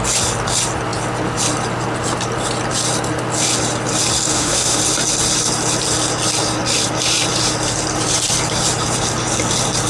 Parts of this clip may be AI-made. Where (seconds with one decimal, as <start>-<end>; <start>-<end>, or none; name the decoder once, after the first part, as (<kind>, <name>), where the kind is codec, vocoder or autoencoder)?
4.3-4.8 (autoencoder, DAC-VAE)